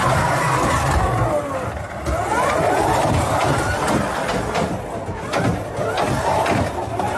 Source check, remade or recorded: recorded